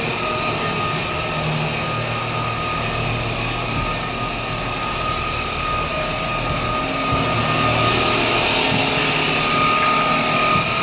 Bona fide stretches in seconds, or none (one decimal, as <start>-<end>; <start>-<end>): 0.0-10.8